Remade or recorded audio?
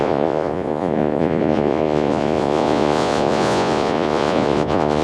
remade